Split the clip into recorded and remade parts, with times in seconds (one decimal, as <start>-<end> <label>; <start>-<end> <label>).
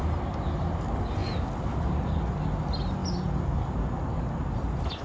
0.0-5.0 recorded